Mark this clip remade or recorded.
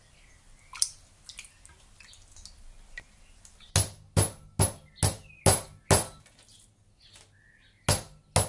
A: recorded